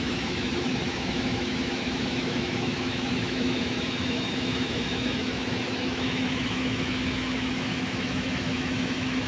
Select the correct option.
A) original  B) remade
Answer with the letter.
B